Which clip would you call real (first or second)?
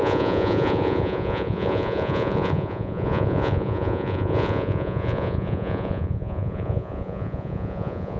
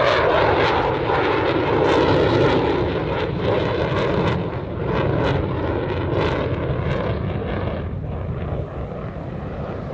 second